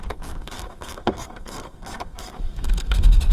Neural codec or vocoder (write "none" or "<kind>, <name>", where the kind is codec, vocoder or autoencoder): codec, SNAC